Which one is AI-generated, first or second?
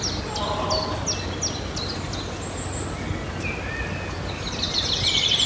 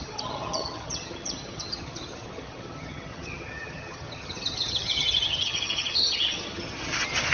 second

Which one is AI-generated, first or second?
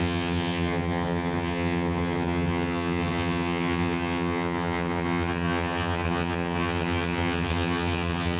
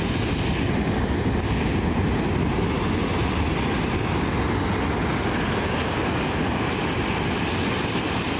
first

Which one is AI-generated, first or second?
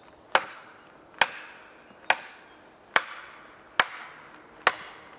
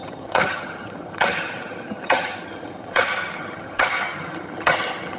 second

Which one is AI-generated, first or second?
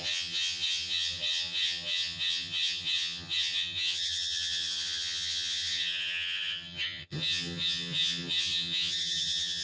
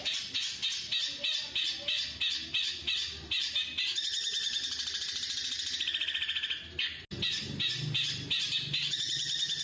first